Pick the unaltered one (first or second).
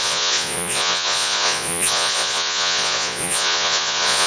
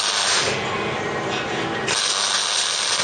second